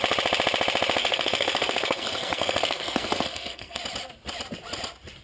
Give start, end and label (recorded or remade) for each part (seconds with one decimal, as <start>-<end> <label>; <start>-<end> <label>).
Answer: 0.0-1.0 recorded; 1.0-3.8 remade; 3.8-5.2 recorded